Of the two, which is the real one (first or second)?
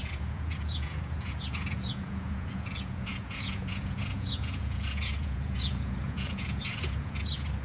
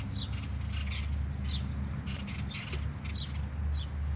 second